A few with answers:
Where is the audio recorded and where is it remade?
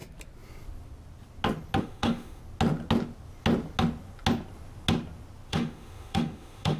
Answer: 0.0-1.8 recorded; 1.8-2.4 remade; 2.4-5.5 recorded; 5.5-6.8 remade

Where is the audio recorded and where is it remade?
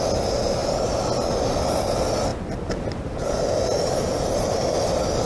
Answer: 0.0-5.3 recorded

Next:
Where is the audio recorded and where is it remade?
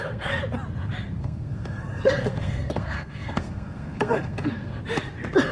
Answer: 0.0-0.4 remade; 0.4-1.2 recorded; 1.2-4.7 remade; 4.7-5.5 recorded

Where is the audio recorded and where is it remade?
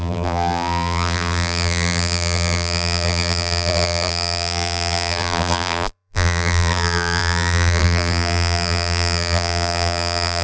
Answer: 0.0-10.4 remade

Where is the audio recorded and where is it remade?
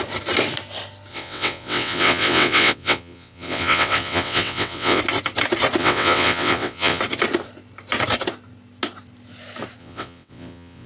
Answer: 0.0-1.1 recorded; 1.1-5.0 remade; 5.0-5.8 recorded; 5.8-7.0 remade; 7.0-9.8 recorded; 9.8-10.9 remade